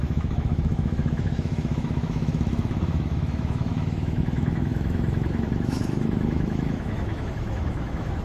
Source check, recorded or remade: remade